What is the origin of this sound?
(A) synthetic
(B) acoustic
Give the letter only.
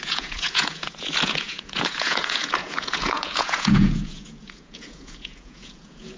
A